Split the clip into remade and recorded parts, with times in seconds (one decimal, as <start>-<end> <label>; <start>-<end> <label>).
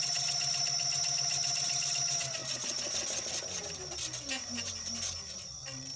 0.0-6.0 recorded